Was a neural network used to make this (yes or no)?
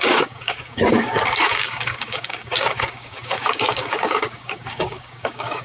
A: yes